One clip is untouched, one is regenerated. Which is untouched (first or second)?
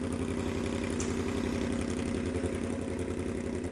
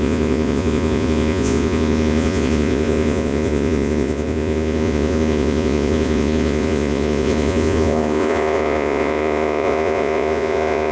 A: first